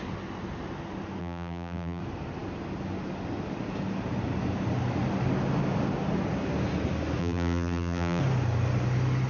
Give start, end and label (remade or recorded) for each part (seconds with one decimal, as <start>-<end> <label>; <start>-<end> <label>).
0.0-1.2 recorded; 1.2-2.0 remade; 2.0-7.2 recorded; 7.2-8.2 remade; 8.2-9.3 recorded